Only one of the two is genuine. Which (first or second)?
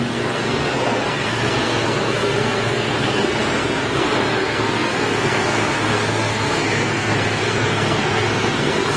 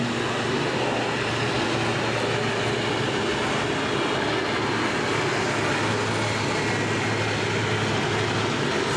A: second